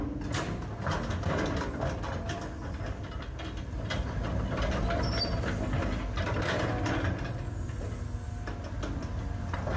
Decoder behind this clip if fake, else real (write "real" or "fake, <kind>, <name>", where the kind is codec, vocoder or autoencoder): real